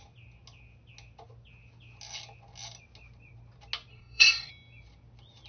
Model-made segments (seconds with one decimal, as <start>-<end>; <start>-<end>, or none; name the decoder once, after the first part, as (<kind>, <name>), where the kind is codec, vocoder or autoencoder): 3.9-4.5 (codec, SNAC)